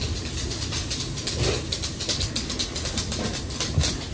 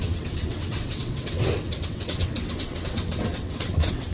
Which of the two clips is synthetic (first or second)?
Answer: second